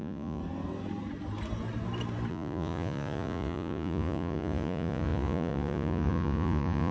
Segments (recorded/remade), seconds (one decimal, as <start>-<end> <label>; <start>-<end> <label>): 0.0-0.4 remade; 0.4-2.3 recorded; 2.3-6.9 remade